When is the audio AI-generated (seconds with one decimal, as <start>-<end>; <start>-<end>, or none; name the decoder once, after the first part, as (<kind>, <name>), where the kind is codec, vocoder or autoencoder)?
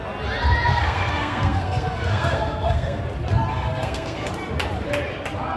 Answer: 0.7-3.0 (codec, SNAC); 3.5-4.3